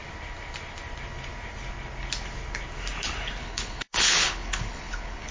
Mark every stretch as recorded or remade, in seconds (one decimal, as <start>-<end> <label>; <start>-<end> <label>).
0.0-3.4 recorded; 3.4-5.3 remade